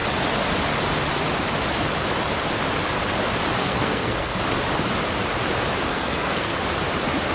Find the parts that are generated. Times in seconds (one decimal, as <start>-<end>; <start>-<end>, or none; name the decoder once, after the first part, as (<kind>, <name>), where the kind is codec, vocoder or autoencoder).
3.6-4.4 (codec, SNAC); 5.9-6.6